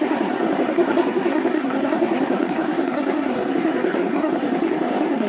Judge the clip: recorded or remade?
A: remade